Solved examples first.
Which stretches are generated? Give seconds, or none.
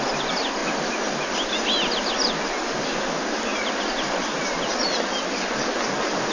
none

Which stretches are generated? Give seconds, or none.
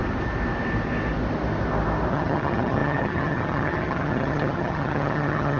2.1-5.6 (vocoder, HiFi-GAN)